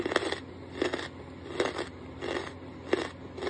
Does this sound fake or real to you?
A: real